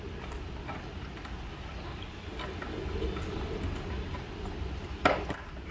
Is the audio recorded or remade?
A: recorded